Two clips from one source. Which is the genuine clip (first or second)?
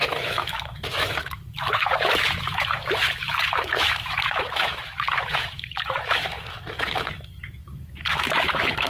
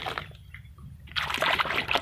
second